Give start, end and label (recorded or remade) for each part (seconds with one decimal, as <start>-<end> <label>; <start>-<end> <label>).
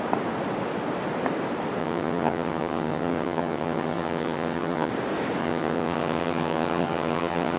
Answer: 0.0-1.8 recorded; 1.8-4.9 remade; 4.9-5.4 recorded; 5.4-7.6 remade